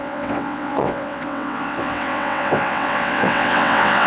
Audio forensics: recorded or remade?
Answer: remade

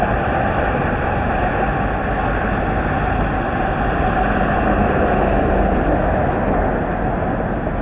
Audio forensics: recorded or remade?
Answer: recorded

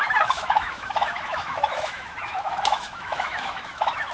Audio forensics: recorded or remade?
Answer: remade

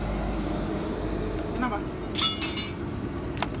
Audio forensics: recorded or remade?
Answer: recorded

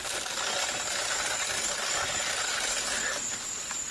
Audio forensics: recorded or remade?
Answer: recorded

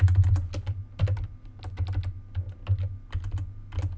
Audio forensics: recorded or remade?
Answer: recorded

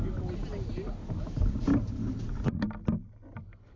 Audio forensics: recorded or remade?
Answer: recorded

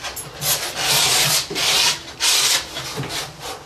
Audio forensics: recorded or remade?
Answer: recorded